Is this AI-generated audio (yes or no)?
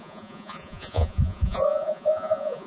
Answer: yes